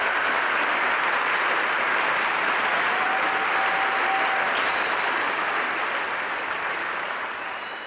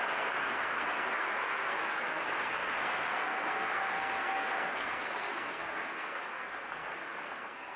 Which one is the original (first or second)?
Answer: first